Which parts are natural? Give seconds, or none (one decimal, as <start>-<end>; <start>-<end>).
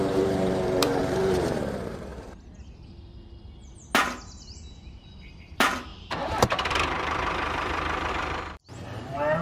2.1-4.5